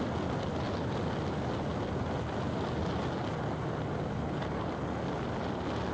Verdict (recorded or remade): recorded